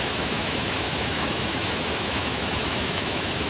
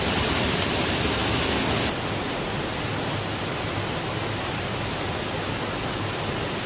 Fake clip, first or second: first